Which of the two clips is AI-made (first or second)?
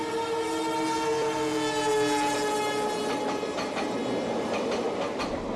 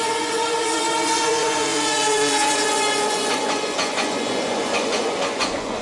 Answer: second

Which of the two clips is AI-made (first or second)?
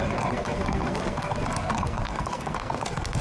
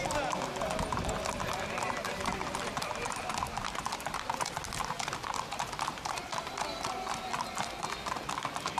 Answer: first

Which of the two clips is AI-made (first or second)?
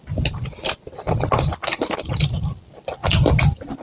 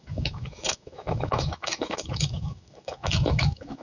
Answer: second